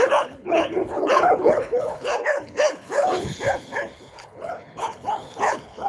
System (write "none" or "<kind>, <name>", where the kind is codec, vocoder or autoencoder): codec, HILCodec